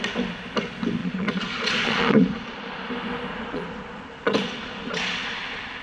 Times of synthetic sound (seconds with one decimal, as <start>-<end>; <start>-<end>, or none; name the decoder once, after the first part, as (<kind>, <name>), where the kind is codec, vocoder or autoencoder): 1.0-2.9 (vocoder, Vocos); 3.3-5.8